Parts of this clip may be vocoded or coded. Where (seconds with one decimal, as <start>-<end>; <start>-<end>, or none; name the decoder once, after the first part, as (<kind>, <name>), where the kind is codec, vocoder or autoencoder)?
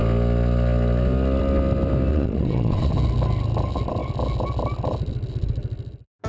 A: 2.1-2.9 (vocoder, WaveNeXt)